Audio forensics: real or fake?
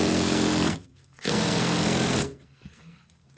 fake